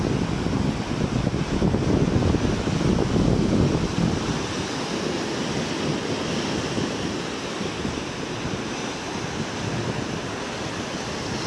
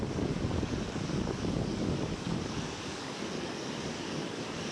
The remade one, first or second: second